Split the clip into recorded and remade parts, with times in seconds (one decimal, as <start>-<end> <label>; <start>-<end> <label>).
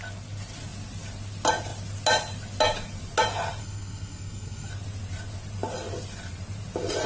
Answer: 0.0-3.6 recorded; 3.6-4.7 remade; 4.7-7.1 recorded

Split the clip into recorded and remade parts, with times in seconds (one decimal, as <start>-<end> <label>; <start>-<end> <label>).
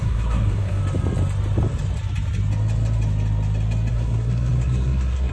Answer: 0.0-0.8 remade; 0.8-3.9 recorded; 3.9-5.3 remade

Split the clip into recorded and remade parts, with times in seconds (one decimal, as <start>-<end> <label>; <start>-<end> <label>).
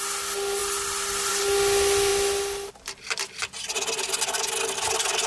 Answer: 0.0-5.3 recorded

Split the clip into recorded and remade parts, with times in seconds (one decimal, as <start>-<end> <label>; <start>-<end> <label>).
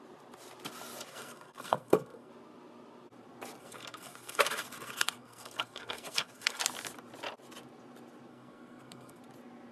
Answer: 0.0-1.1 recorded; 1.1-2.3 remade; 2.3-3.6 recorded; 3.6-6.6 remade; 6.6-8.3 recorded; 8.3-9.2 remade; 9.2-9.7 recorded